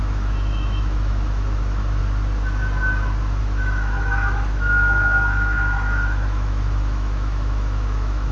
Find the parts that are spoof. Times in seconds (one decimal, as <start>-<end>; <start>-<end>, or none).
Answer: 0.0-2.0; 3.4-8.3